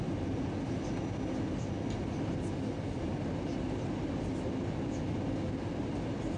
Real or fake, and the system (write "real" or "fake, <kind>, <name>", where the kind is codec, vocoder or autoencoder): real